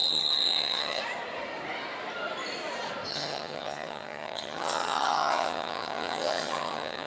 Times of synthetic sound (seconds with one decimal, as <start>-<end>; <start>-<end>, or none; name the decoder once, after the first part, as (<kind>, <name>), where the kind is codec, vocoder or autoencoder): 0.0-1.0 (vocoder, HiFi-GAN); 3.1-7.1